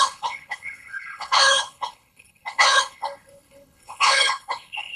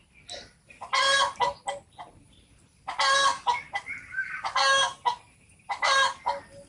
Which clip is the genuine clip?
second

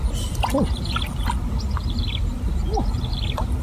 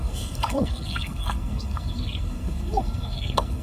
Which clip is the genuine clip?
first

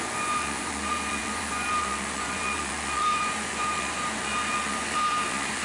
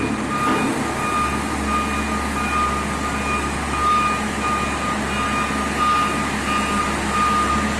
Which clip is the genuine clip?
second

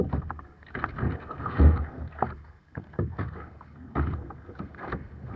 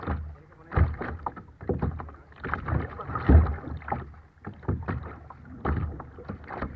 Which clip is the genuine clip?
second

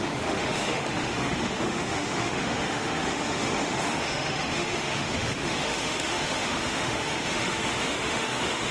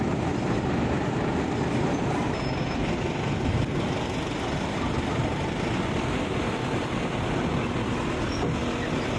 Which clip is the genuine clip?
second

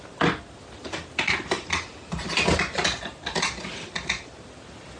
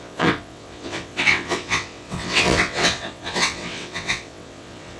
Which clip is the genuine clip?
first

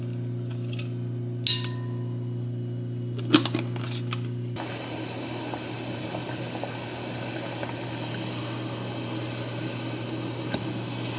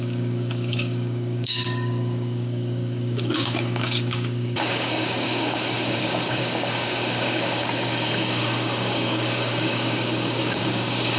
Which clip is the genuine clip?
first